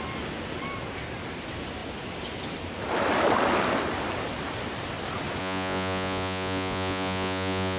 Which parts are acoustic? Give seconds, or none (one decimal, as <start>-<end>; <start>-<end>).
0.0-5.4